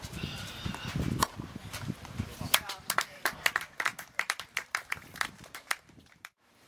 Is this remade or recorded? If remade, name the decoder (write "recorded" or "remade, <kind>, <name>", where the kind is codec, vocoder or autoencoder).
remade, vocoder, BigVGAN v2